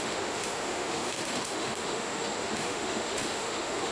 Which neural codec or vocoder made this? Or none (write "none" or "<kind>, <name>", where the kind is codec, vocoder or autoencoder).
autoencoder, DAC-VAE